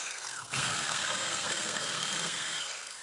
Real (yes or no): no